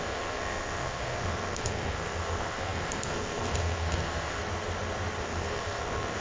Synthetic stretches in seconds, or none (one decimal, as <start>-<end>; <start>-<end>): 0.0-4.4; 5.2-6.2